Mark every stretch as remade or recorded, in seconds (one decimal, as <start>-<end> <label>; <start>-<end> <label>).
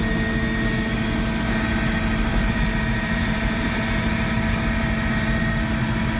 0.0-2.3 recorded; 2.3-4.3 remade; 4.3-6.2 recorded